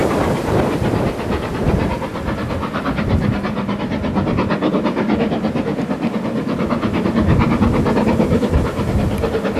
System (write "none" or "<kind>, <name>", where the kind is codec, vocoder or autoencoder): none